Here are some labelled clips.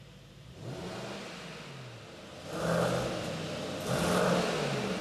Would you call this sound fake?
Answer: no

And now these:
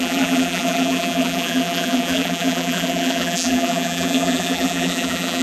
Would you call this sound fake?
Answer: yes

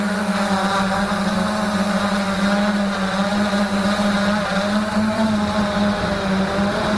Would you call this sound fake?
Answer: no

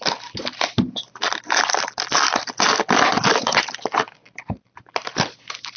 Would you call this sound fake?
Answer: no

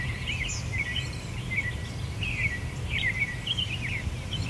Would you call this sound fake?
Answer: yes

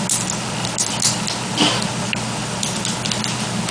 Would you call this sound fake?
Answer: no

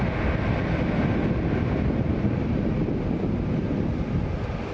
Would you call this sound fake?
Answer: no